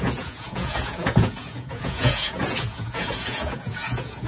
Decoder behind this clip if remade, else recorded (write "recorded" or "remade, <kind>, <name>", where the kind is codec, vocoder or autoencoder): remade, vocoder, Vocos